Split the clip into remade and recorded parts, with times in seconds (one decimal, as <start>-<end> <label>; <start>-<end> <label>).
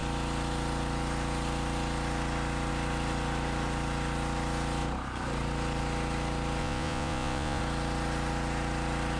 0.0-6.6 recorded; 6.6-7.6 remade; 7.6-9.2 recorded